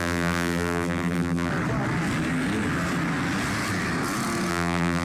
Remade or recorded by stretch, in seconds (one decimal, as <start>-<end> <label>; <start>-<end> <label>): 0.0-1.5 remade; 1.5-4.5 recorded; 4.5-5.0 remade